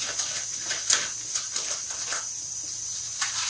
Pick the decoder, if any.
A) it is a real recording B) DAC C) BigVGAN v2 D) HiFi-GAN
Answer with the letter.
A